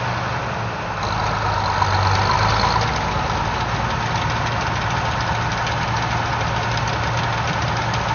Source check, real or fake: real